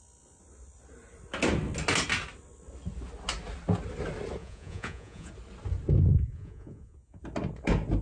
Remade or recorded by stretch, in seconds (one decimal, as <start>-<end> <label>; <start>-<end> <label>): 0.0-4.4 recorded; 4.4-5.3 remade; 5.3-6.1 recorded; 6.1-7.2 remade; 7.2-8.0 recorded